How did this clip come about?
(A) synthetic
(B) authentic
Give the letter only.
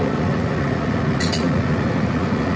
A